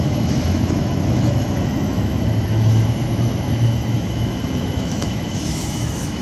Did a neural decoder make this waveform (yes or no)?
yes